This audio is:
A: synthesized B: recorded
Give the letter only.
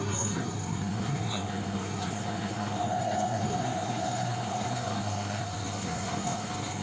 A